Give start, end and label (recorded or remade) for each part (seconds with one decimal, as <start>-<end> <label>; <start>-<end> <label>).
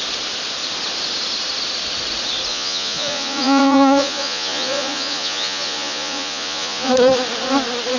0.0-2.5 recorded; 2.5-6.9 remade; 6.9-8.0 recorded